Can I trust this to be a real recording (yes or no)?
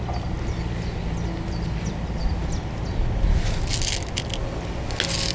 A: yes